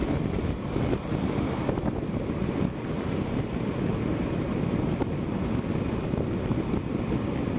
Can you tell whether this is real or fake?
real